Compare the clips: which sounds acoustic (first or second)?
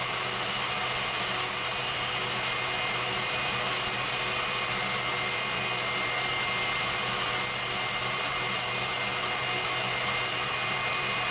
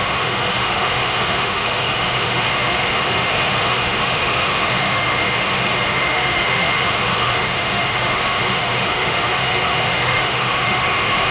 first